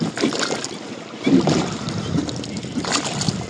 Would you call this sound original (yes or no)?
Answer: yes